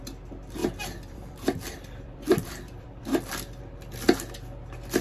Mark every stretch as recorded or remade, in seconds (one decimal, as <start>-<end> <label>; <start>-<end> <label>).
0.0-0.6 recorded; 0.6-3.6 remade; 3.6-5.0 recorded